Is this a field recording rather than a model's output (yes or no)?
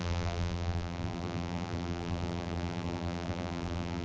no